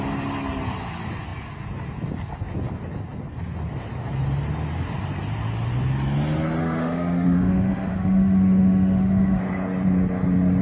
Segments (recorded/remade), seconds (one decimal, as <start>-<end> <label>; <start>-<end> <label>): 0.0-6.6 recorded; 6.6-9.4 remade; 9.4-10.6 recorded